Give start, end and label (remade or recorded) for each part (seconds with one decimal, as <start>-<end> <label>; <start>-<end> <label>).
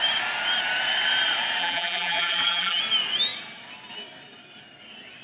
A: 0.0-1.6 recorded; 1.6-2.8 remade; 2.8-5.2 recorded